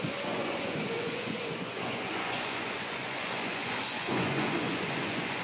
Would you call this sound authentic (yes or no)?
no